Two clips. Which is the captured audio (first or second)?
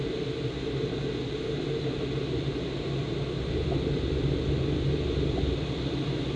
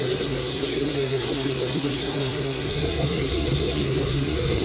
first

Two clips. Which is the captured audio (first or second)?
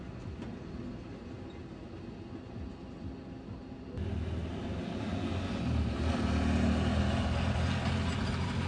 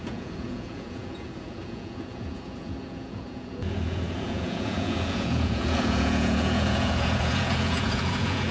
first